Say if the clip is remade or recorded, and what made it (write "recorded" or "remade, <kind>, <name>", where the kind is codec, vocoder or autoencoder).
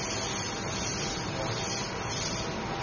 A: recorded